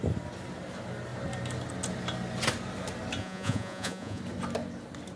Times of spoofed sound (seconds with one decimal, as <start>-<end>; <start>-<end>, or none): 3.2-4.2